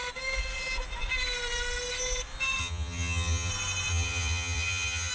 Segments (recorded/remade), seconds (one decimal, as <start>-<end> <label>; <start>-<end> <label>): 0.0-2.6 recorded; 2.6-3.5 remade; 3.5-3.9 recorded; 3.9-5.1 remade